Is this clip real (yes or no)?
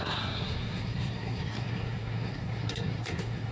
no